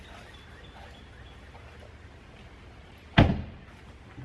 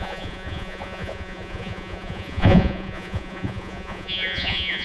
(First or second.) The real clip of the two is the first